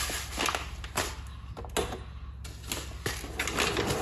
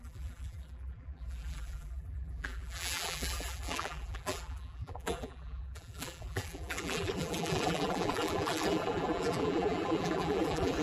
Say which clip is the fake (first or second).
second